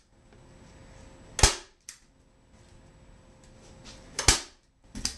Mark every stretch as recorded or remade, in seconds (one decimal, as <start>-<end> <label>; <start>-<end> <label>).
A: 0.0-5.2 recorded